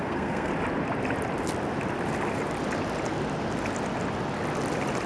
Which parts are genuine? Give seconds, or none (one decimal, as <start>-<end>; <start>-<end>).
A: 0.5-5.1